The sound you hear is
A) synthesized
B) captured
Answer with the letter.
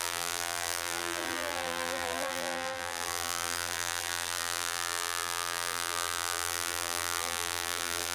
A